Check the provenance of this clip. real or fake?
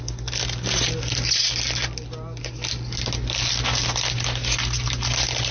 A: real